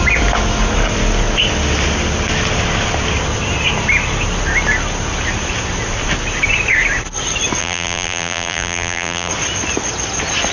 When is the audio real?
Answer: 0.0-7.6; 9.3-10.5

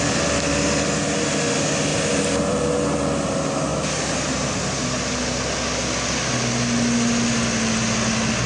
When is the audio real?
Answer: 0.0-1.9; 2.6-8.5

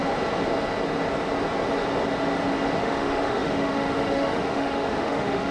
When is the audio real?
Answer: 0.0-2.8

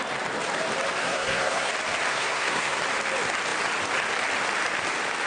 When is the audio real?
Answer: 0.0-1.0; 1.7-2.1; 2.8-5.3

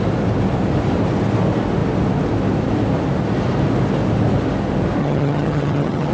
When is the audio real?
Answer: 0.0-5.0

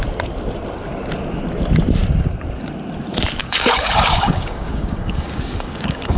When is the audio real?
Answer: 0.0-3.4